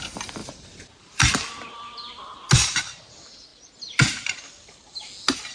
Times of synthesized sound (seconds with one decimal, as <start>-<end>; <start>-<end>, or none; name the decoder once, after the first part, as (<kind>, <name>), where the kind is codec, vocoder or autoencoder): 0.4-1.3 (vocoder, BigVGAN v2)